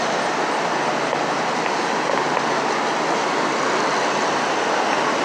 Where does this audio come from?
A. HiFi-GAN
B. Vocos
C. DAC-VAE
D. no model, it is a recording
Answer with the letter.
D